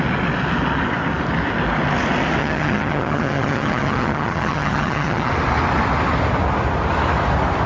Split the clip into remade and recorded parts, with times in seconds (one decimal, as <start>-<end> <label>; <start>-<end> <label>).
0.0-2.4 recorded; 2.4-5.3 remade; 5.3-7.7 recorded